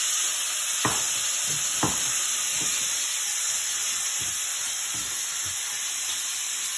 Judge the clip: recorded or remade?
recorded